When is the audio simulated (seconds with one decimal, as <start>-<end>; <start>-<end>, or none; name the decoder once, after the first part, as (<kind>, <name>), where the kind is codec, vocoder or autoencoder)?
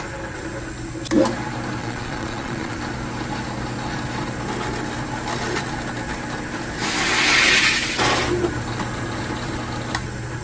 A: 1.8-2.8 (vocoder, Vocos)